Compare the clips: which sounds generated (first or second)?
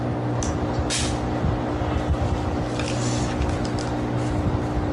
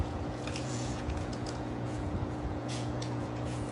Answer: second